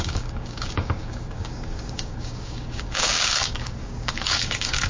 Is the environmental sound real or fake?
fake